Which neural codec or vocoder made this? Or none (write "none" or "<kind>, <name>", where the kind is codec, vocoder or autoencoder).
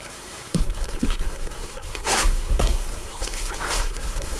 codec, SNAC